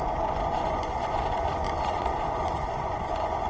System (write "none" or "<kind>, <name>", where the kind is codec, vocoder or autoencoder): vocoder, Vocos